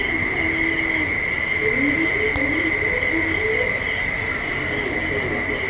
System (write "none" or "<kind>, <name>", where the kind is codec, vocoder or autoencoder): none